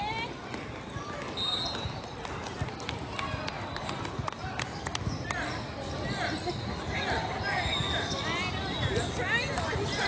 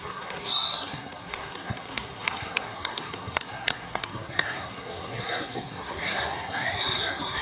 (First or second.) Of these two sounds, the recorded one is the first